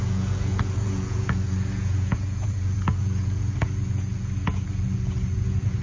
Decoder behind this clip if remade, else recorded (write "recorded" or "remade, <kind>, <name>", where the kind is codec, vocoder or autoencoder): remade, vocoder, Vocos